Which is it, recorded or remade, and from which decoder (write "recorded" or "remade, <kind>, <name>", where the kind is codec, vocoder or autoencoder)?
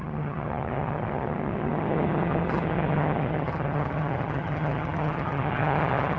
remade, vocoder, HiFi-GAN